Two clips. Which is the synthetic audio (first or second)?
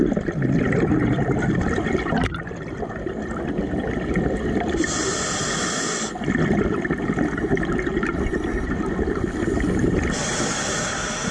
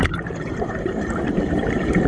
second